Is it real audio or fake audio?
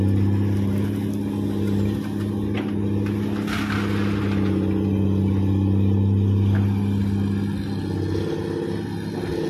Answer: real